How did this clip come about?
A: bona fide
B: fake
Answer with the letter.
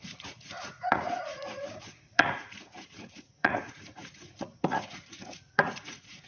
B